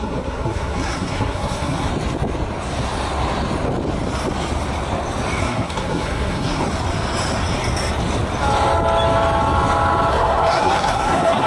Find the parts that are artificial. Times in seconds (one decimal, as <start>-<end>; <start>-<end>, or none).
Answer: 0.0-1.9; 5.4-6.6; 10.1-11.5

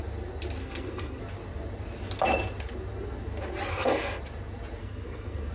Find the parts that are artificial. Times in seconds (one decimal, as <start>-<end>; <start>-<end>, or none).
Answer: 0.6-1.2; 3.7-4.2; 4.8-5.5

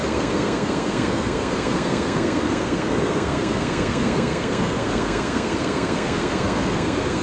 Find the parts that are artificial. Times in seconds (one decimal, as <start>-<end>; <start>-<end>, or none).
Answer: 0.0-7.2

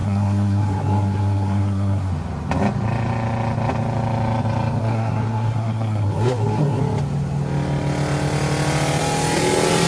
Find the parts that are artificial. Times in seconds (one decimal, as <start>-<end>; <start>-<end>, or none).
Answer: 0.0-2.1; 4.8-6.8

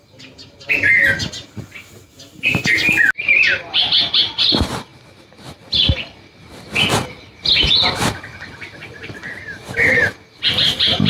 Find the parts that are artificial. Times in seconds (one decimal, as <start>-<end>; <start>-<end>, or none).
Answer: none

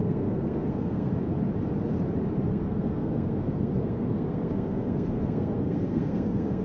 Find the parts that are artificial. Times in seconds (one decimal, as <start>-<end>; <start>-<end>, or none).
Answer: 0.0-1.1; 2.5-6.6

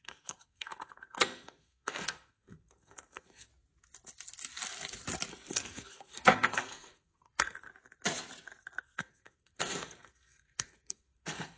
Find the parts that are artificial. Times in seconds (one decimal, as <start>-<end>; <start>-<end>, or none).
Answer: 0.0-3.5; 5.3-7.7; 8.8-11.6